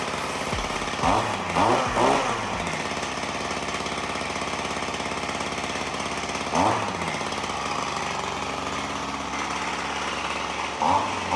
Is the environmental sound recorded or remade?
recorded